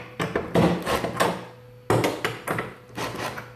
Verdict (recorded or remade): recorded